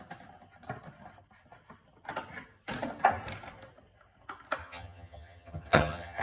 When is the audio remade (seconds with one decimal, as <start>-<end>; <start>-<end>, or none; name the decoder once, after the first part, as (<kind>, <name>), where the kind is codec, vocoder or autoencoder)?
4.6-6.2 (vocoder, HiFi-GAN)